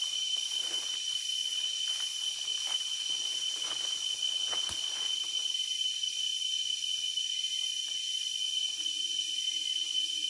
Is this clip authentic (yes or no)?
yes